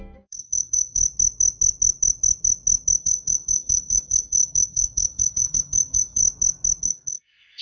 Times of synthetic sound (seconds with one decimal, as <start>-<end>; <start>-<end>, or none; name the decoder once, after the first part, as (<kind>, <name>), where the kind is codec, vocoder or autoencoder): 0.0-1.0 (codec, SNAC); 3.0-6.2; 6.8-7.6